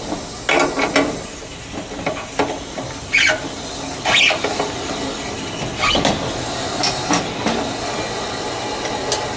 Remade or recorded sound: recorded